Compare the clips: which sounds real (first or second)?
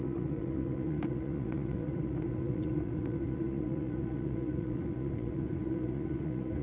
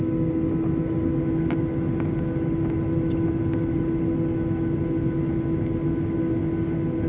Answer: second